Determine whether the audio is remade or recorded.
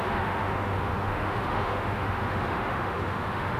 remade